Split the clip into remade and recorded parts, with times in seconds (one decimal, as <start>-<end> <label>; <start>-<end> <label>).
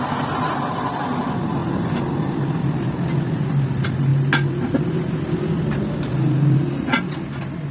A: 0.0-7.7 recorded